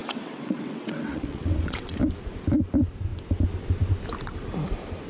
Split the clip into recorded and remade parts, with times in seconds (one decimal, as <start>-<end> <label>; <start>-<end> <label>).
0.0-2.0 remade; 2.0-5.1 recorded